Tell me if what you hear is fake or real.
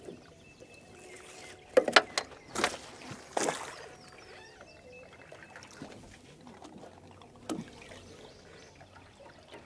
real